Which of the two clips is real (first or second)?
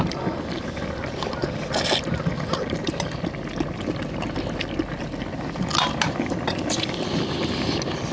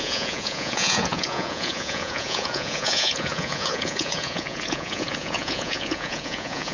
first